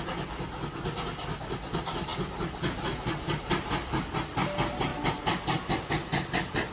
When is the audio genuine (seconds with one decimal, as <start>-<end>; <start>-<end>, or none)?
0.0-6.7